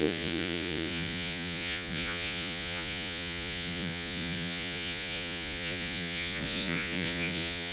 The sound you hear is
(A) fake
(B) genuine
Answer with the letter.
A